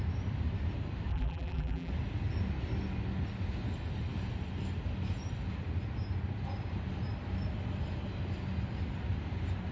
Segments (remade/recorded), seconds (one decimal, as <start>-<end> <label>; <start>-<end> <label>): 0.0-1.1 recorded; 1.1-1.9 remade; 1.9-9.7 recorded